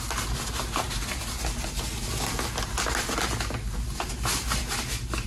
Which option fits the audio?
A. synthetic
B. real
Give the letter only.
B